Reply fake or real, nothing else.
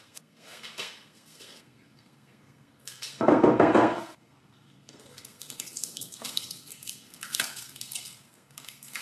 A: fake